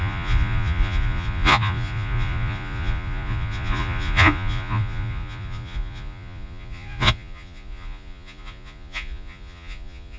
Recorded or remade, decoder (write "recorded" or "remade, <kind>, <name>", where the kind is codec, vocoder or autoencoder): remade, vocoder, Vocos